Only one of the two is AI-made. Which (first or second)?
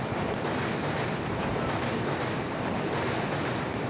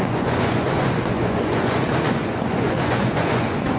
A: second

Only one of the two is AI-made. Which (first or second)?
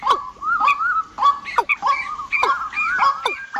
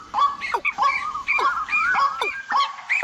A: second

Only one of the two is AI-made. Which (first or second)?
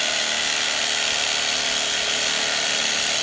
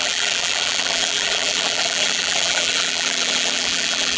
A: second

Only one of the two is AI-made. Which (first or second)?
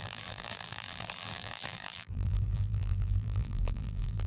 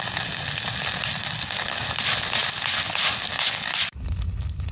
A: first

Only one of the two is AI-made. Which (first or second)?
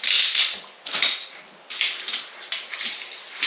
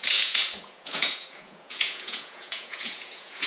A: second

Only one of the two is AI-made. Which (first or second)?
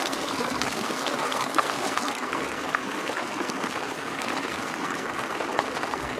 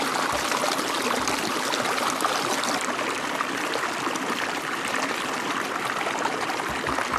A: first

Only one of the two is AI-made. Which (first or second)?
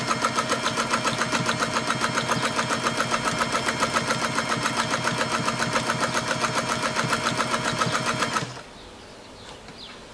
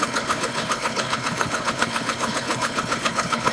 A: second